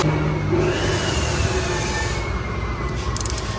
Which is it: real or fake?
real